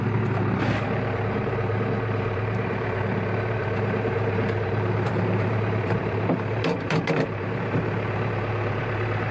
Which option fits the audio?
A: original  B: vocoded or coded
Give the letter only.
B